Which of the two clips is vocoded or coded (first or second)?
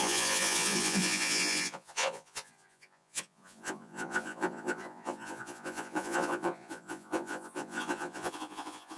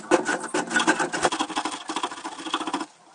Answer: first